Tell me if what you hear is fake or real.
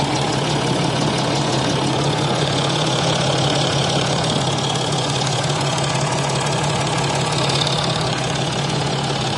fake